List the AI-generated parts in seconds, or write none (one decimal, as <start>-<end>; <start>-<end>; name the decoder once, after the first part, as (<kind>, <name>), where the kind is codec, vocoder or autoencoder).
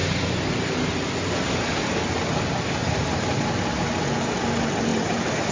2.8-3.8 (vocoder, BigVGAN v2); 4.9-5.5